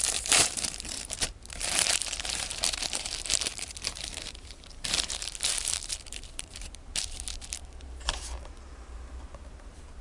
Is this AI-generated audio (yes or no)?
yes